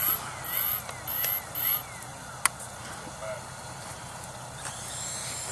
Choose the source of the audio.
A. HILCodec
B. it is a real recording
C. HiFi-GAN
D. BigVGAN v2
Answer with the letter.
B